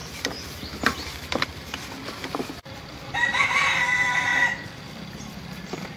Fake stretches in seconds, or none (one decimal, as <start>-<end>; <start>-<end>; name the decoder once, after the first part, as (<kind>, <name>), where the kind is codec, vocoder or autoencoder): 0.0-6.0 (vocoder, BigVGAN v2)